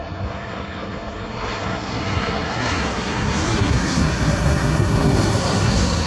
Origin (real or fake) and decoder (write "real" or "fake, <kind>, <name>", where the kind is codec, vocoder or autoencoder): fake, codec, SNAC